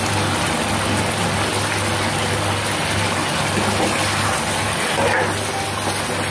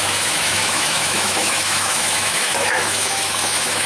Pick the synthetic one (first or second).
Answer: second